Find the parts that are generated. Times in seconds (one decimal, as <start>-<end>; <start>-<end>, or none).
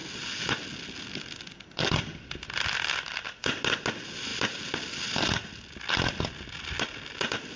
none